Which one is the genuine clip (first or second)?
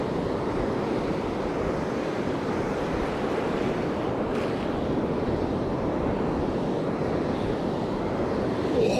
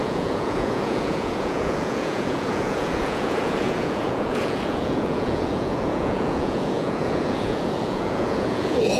first